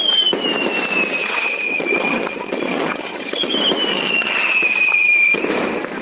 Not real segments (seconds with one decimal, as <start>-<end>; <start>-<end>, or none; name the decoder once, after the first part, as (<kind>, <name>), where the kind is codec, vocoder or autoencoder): 1.2-3.5 (vocoder, HiFi-GAN); 3.9-5.4